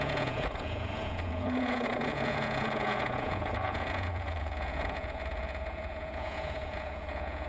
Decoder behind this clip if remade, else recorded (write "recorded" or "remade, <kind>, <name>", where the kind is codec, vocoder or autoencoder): remade, vocoder, Vocos